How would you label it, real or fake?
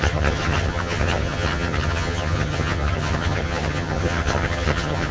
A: fake